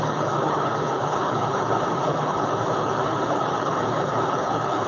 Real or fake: fake